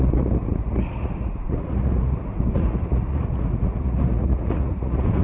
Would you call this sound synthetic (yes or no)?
yes